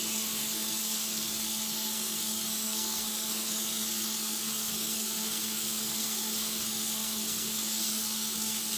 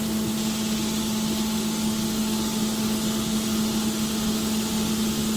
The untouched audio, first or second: second